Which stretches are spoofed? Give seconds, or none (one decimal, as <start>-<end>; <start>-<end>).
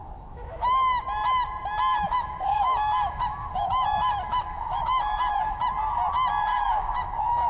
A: 0.0-0.7; 1.9-5.6; 6.5-7.5